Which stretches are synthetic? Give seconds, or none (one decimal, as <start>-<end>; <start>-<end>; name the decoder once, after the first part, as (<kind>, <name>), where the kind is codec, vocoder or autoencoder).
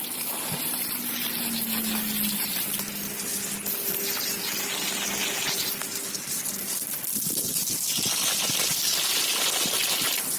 none